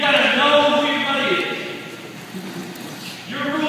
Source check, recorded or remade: remade